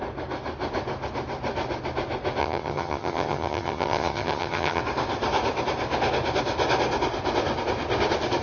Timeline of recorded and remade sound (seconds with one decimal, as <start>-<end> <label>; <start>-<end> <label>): 0.0-2.4 recorded; 2.4-4.8 remade; 4.8-8.4 recorded